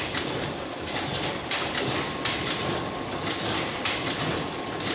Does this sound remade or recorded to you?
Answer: remade